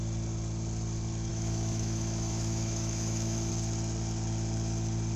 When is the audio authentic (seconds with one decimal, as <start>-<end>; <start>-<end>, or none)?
0.0-1.3; 3.5-5.2